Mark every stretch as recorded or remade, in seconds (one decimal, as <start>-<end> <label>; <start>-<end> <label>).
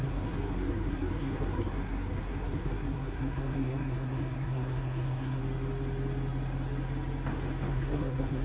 0.0-5.4 remade; 5.4-7.7 recorded; 7.7-8.4 remade